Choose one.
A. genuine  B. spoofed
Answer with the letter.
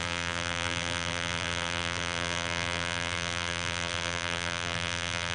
B